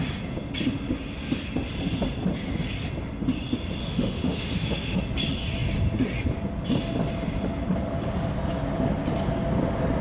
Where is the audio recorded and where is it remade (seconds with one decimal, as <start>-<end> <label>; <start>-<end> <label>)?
0.0-3.8 recorded; 3.8-5.0 remade; 5.0-10.0 recorded